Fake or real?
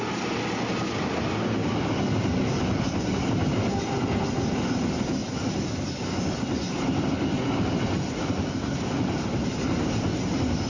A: real